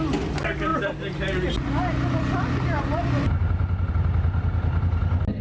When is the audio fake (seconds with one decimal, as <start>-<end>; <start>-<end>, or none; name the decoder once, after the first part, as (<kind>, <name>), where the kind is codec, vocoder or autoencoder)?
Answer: none

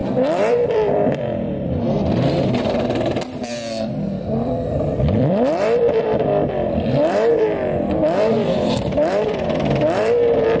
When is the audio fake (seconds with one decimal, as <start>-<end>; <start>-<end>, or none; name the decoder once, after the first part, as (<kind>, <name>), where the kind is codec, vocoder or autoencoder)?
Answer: 0.0-10.6 (vocoder, BigVGAN v2)

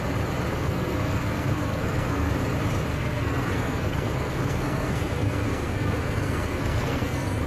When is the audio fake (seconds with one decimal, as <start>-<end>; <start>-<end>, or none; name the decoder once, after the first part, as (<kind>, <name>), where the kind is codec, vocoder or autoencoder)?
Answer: 0.5-2.3 (codec, SNAC); 2.9-7.5

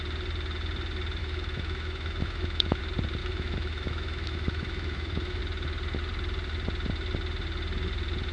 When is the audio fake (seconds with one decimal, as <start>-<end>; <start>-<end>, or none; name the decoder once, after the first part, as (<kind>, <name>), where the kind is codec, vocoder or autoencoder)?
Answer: 1.2-2.8 (autoencoder, DAC-VAE); 3.2-5.4